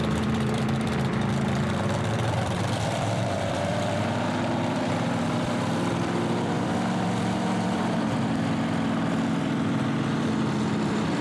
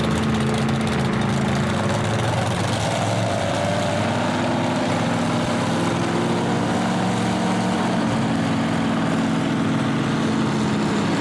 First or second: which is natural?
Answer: second